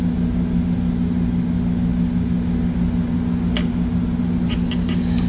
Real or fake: real